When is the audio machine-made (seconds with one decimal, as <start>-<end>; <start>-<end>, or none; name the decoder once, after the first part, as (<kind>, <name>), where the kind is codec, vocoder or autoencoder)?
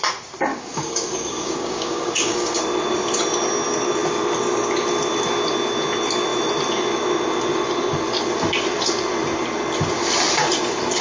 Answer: 0.5-2.6 (codec, DAC)